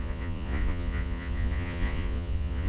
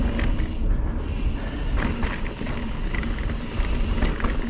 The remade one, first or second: first